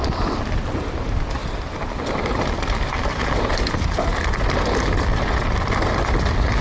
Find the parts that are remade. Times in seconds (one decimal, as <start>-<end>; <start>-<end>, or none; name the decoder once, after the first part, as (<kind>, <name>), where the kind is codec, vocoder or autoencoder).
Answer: none